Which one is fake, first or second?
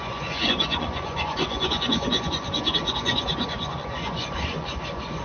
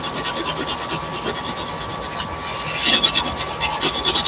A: first